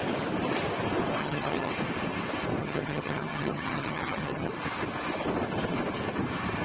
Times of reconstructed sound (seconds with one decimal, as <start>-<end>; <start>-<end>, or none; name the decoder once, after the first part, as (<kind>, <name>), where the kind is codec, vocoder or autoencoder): 1.2-1.7 (vocoder, HiFi-GAN); 2.6-4.5